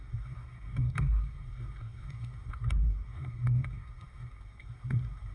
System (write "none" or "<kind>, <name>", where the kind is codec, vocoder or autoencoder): codec, SNAC